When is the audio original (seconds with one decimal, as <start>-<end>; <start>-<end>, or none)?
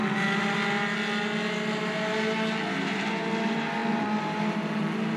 0.0-5.2